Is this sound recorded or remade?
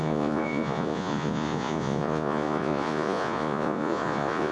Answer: remade